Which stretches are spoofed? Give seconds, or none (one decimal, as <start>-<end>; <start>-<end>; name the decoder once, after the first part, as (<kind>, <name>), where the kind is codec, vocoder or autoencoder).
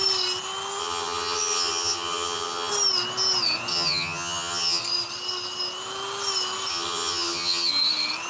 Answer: 0.8-2.7 (vocoder, HiFi-GAN); 3.7-4.8; 6.7-7.7